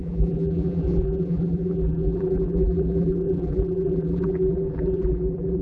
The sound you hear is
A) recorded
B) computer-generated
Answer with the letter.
B